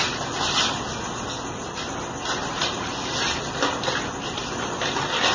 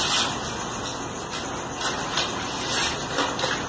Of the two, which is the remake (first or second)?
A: first